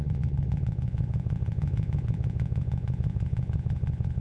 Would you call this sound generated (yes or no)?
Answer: yes